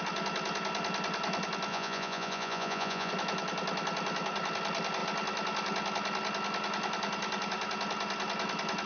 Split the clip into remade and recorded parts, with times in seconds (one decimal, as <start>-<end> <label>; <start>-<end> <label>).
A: 0.0-1.7 recorded; 1.7-3.1 remade; 3.1-8.9 recorded